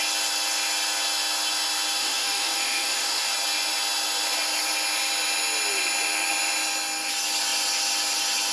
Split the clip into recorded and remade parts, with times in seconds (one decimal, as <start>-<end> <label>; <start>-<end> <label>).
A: 0.0-2.0 recorded; 2.0-3.3 remade; 3.3-8.5 recorded